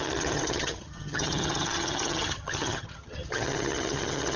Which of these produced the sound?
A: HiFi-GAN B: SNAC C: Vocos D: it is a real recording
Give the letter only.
A